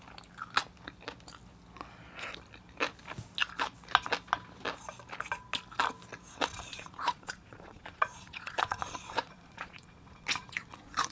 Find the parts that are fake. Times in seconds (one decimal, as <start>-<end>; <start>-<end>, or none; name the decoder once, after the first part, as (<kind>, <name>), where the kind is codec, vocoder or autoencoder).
6.7-11.1 (vocoder, Vocos)